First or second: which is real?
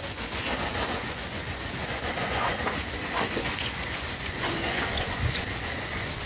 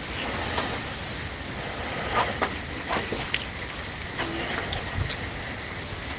second